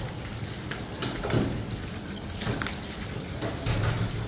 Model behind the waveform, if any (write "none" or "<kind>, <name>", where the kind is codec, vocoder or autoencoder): none